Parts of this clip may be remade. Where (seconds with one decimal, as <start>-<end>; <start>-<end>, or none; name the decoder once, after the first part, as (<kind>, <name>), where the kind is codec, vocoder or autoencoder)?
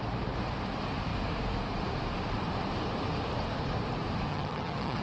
4.3-5.0 (vocoder, HiFi-GAN)